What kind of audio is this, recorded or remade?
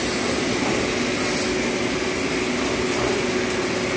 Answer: recorded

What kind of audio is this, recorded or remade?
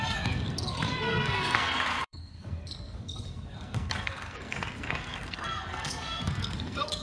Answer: remade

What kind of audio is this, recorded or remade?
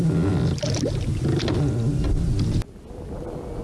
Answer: recorded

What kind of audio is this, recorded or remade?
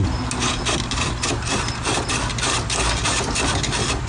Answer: recorded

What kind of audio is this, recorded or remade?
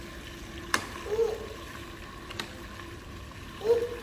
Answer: recorded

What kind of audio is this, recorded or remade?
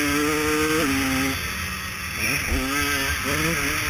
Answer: recorded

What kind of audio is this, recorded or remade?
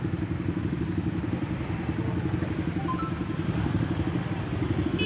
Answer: recorded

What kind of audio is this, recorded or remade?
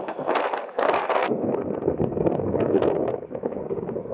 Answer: remade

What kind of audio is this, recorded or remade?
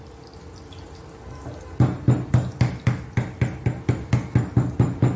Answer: recorded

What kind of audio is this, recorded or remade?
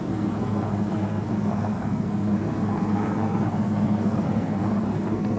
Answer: remade